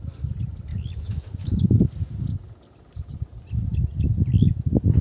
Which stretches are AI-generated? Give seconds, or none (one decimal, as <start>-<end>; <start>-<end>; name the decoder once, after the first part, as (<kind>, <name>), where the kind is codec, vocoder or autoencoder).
0.7-1.8 (autoencoder, DAC-VAE)